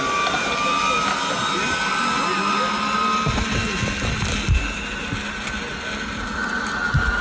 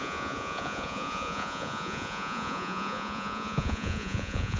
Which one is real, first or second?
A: first